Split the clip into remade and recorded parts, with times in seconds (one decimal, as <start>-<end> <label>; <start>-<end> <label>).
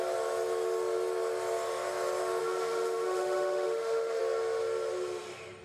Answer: 0.0-2.4 recorded; 2.4-4.2 remade; 4.2-5.6 recorded